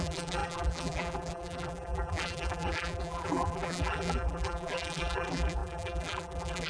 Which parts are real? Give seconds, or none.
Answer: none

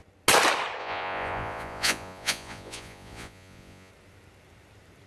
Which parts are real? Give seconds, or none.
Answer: 0.0-0.8; 3.9-5.1

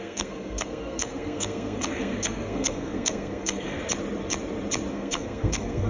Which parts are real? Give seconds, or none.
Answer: 3.8-4.9